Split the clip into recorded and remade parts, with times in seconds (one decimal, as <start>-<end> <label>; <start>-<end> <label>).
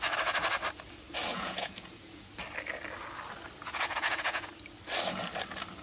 0.0-1.3 recorded; 1.3-2.3 remade; 2.3-3.6 recorded; 3.6-4.5 remade; 4.5-5.8 recorded